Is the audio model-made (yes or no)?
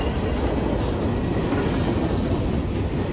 no